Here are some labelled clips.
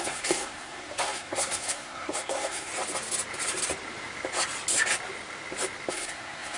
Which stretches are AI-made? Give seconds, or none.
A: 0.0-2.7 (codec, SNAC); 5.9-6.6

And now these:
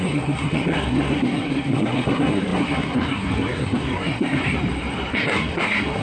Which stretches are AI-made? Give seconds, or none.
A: 0.0-4.4 (codec, SNAC); 5.1-6.0

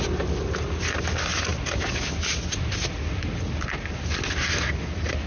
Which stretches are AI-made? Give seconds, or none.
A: none

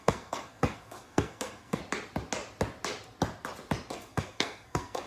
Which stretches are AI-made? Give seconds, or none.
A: 0.0-1.8 (codec, SNAC); 3.9-5.1

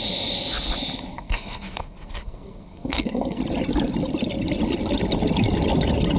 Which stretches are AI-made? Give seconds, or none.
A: 1.1-3.4 (codec, SNAC)